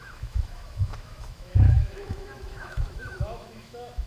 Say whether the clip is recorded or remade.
remade